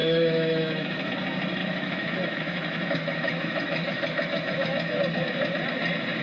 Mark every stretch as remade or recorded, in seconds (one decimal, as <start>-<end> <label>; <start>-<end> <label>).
0.0-1.1 remade; 1.1-1.6 recorded; 1.6-4.9 remade; 4.9-6.2 recorded